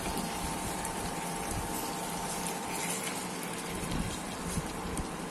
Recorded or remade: recorded